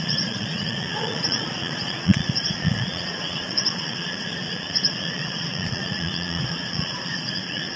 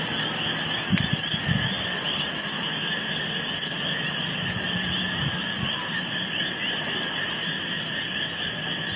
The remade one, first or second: first